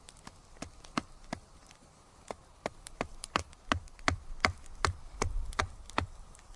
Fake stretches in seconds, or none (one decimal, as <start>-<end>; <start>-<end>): none